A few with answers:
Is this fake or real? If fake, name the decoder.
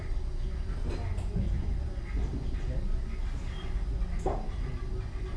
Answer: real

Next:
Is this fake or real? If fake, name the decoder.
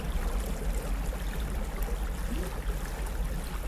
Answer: real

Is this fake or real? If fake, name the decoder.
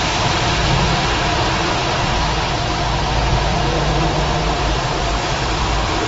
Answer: fake, vocoder, BigVGAN v2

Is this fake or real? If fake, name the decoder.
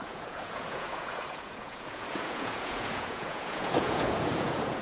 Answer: fake, vocoder, Vocos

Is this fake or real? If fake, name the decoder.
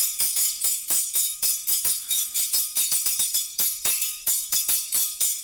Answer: fake, codec, DAC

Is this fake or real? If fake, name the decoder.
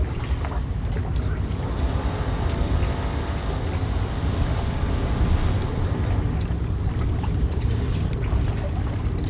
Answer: real